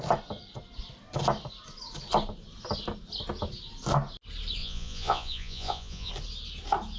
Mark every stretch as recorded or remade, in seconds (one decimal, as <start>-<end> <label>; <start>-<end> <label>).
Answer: 0.0-4.6 recorded; 4.6-6.1 remade; 6.1-7.0 recorded